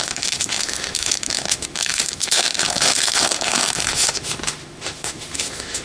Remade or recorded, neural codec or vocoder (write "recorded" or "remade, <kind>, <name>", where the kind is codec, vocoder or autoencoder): remade, autoencoder, DAC-VAE